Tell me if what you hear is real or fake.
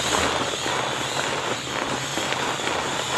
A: real